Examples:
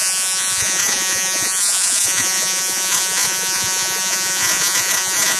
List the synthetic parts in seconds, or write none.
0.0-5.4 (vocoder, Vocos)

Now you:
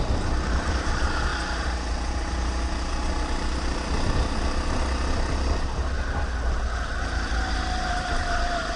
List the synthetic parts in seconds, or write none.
none